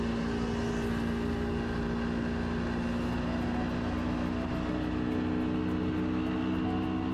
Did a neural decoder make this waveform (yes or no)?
no